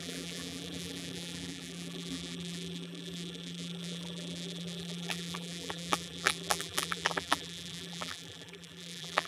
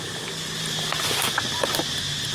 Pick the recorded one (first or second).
second